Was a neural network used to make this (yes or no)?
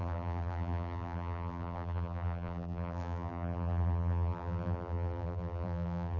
yes